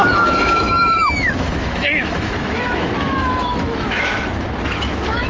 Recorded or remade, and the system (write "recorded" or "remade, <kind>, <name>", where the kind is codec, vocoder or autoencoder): remade, autoencoder, DAC-VAE